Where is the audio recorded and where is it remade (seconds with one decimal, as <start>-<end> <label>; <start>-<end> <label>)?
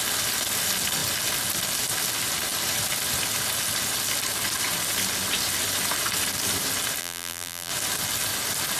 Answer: 0.0-7.0 recorded; 7.0-7.7 remade; 7.7-8.8 recorded